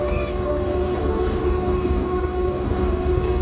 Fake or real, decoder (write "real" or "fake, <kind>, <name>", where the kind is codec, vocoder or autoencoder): fake, codec, DAC